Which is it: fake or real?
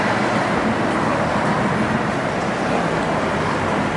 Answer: real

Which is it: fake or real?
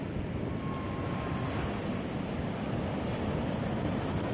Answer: real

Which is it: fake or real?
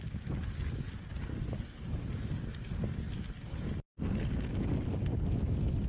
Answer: real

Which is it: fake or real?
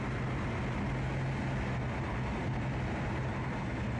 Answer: real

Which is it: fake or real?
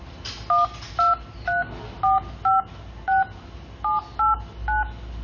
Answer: real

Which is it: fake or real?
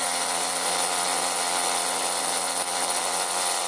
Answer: real